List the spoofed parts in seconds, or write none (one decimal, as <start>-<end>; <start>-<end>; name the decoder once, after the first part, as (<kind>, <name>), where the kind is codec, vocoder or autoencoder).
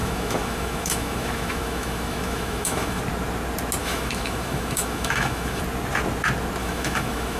0.0-3.0 (autoencoder, DAC-VAE); 3.8-5.6; 6.6-7.4